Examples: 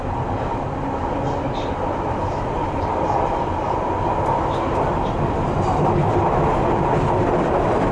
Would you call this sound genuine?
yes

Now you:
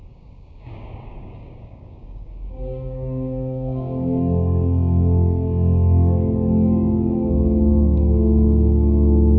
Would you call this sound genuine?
no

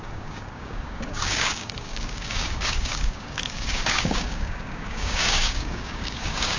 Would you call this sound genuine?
no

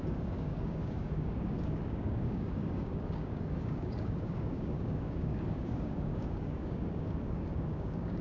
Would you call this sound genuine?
no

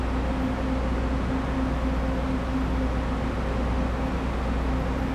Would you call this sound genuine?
yes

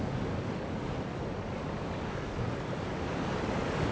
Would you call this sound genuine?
no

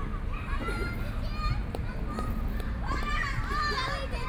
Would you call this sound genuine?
yes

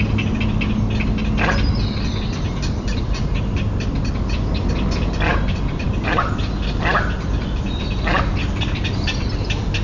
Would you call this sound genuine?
yes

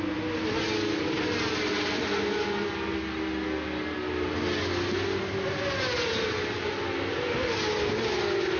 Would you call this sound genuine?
yes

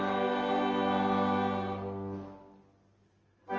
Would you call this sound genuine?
yes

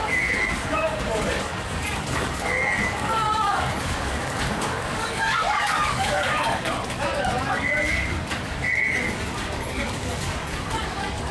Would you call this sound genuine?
no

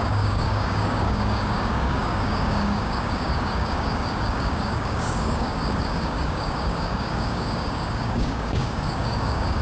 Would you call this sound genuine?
no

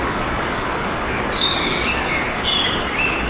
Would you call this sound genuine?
no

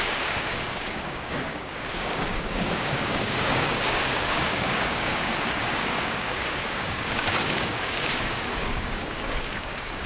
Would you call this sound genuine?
no